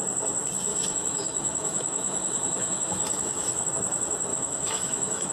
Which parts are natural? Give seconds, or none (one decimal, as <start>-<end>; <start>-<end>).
0.0-0.7; 3.7-4.3